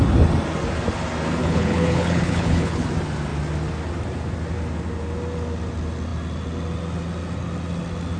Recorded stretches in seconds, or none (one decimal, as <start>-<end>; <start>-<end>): 0.0-1.4; 2.9-8.2